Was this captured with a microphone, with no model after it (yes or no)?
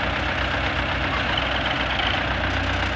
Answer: yes